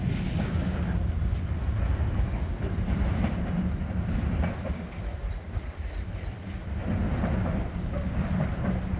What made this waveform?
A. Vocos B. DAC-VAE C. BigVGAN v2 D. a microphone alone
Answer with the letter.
C